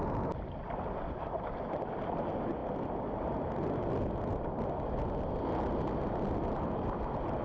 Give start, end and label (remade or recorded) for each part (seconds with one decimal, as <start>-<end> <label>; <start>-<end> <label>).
0.0-7.4 recorded